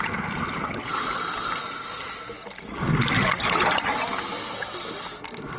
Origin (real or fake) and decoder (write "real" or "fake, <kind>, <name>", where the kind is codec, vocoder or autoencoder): real